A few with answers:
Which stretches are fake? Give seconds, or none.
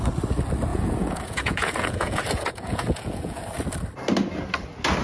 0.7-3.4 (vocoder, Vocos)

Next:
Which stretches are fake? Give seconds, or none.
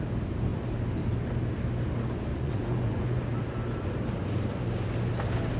2.3-3.2 (vocoder, Vocos)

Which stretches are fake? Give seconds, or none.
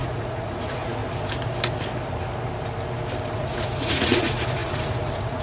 0.0-1.0 (vocoder, Vocos); 3.3-5.4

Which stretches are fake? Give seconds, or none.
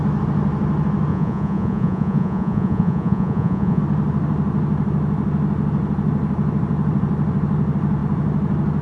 1.1-3.8 (vocoder, Vocos)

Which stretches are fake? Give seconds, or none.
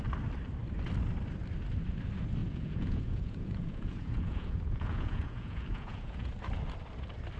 2.4-6.3 (vocoder, Vocos)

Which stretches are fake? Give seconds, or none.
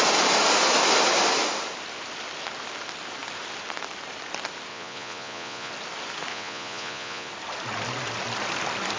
4.7-5.7 (vocoder, Vocos); 6.3-7.3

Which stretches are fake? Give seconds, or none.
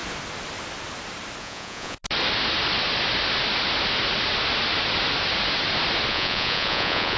1.4-2.0 (vocoder, Vocos); 6.1-7.2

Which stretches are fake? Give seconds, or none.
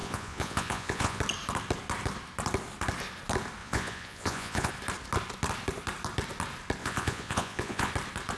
0.0-1.2 (vocoder, Vocos); 3.6-4.7; 6.8-7.9